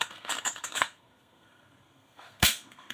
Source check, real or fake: fake